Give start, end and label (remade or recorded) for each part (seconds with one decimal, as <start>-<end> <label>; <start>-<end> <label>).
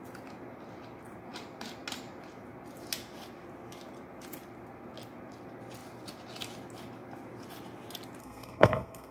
0.0-8.2 recorded; 8.2-9.1 remade